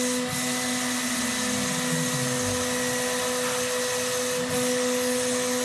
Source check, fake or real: real